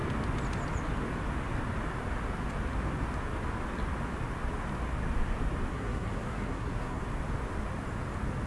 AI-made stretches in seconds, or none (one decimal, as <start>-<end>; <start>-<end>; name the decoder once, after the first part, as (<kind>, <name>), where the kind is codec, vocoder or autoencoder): 5.7-7.0 (codec, SNAC)